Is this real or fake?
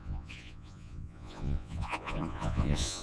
fake